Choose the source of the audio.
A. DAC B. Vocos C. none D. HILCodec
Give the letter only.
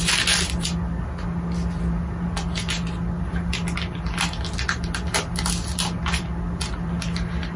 C